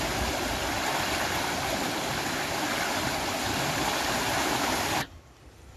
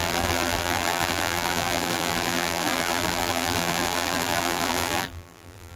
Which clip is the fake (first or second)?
second